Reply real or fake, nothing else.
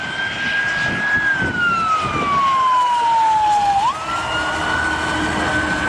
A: real